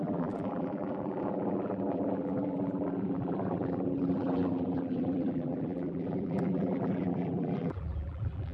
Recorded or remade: remade